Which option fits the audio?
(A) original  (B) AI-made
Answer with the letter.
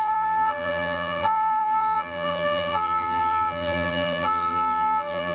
B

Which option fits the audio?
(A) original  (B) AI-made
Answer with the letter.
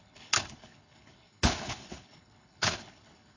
B